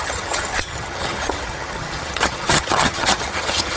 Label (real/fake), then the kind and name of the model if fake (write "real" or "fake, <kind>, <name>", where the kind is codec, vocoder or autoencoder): fake, vocoder, HiFi-GAN